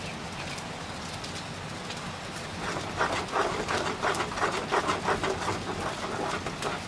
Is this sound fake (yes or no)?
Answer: no